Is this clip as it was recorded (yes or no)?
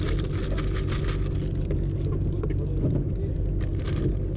yes